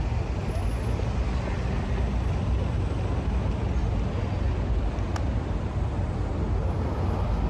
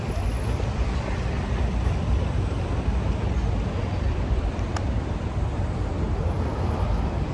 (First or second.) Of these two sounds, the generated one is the second